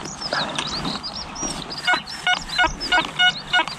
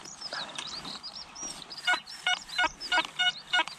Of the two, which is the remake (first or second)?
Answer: second